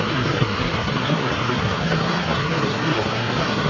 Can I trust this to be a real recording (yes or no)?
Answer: no